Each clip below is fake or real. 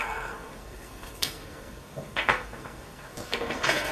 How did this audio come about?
fake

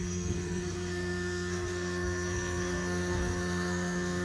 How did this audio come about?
fake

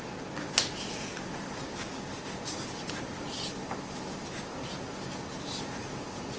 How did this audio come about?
real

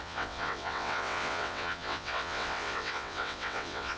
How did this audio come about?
fake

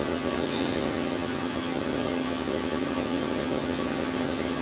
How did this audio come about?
fake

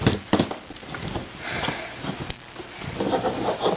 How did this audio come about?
real